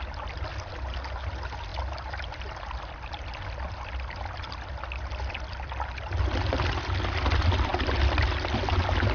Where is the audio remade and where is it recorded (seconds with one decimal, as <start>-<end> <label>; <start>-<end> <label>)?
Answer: 0.0-9.1 recorded

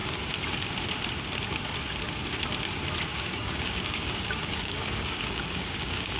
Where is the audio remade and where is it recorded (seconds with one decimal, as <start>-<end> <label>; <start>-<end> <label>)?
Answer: 0.0-3.1 recorded; 3.1-6.2 remade

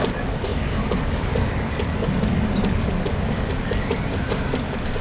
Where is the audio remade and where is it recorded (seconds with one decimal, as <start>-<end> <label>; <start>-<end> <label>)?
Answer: 0.0-5.0 remade

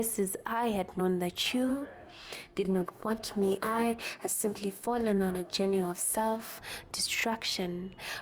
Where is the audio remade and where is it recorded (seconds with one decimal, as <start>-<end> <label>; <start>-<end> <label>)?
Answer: 0.0-1.7 recorded; 1.7-6.6 remade; 6.6-8.2 recorded

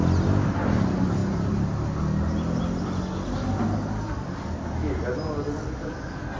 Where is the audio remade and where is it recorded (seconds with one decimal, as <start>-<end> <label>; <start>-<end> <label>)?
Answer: 0.0-6.4 recorded

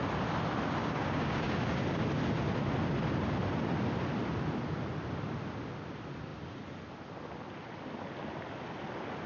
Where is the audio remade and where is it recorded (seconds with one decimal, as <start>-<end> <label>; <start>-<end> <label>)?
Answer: 0.0-0.8 recorded; 0.8-1.5 remade; 1.5-9.3 recorded

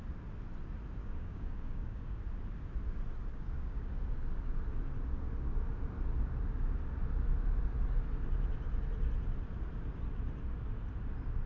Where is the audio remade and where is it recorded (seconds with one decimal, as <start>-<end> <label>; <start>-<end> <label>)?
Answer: 0.0-1.0 recorded; 1.0-2.2 remade; 2.2-3.3 recorded; 3.3-3.9 remade; 3.9-11.5 recorded